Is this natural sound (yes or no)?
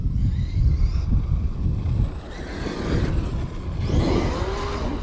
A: yes